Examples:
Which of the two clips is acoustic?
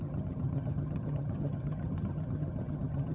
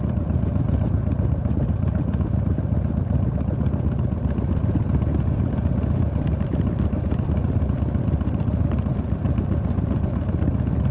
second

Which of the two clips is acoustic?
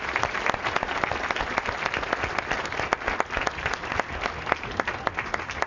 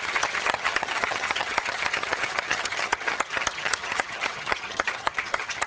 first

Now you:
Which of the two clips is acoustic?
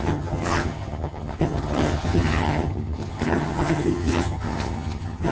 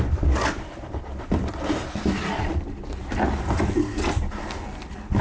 second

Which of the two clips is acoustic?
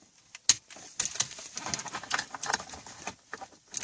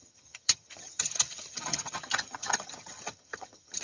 first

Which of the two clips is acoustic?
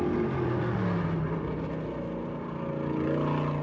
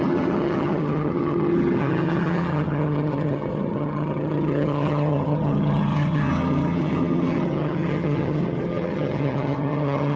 first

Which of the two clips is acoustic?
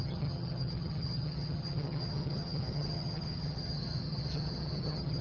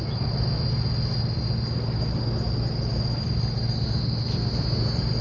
second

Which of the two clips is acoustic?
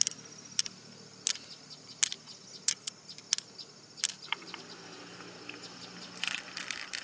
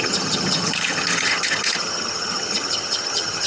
first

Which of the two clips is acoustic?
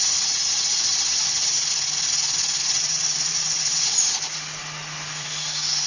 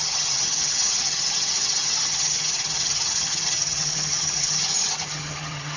first